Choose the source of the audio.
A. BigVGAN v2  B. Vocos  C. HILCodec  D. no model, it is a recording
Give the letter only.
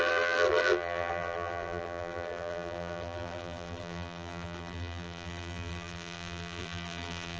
A